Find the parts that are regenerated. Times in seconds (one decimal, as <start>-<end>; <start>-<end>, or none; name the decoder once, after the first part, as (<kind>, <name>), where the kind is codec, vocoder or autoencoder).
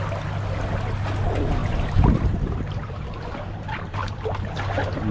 1.6-4.5 (vocoder, BigVGAN v2)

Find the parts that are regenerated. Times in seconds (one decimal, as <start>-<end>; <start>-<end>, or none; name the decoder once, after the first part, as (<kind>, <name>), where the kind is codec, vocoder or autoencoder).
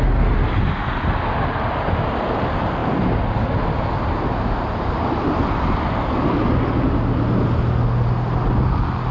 none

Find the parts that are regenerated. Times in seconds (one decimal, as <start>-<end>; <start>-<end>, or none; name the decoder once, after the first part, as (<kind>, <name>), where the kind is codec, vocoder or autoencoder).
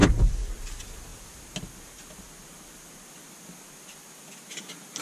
0.0-0.5 (vocoder, BigVGAN v2)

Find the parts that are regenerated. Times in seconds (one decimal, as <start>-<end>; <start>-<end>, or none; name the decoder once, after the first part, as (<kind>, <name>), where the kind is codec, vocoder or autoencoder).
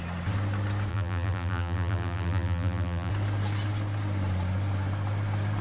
0.9-3.1 (vocoder, BigVGAN v2)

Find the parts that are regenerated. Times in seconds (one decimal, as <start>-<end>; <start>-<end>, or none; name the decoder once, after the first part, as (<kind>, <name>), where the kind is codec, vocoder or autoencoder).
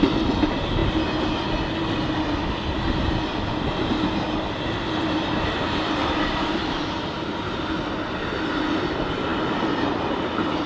6.0-7.1 (vocoder, BigVGAN v2)